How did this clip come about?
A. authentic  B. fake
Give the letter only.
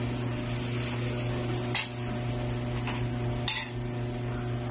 A